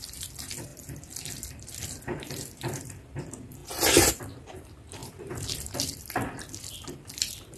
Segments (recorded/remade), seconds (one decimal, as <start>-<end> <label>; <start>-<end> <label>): 0.0-5.0 remade; 5.0-5.8 recorded; 5.8-7.6 remade